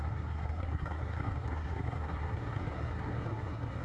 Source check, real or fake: fake